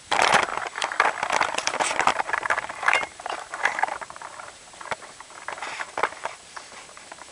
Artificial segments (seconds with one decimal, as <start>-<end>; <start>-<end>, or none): 0.0-0.5; 1.7-7.3